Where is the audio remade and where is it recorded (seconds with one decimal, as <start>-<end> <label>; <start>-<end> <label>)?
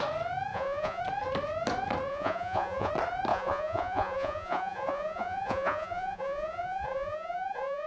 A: 0.0-0.5 recorded; 0.5-1.0 remade; 1.0-2.1 recorded; 2.1-2.9 remade; 2.9-3.3 recorded; 3.3-7.9 remade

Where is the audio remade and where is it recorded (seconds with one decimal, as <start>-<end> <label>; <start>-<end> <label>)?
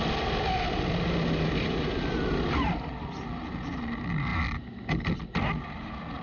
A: 0.0-6.2 recorded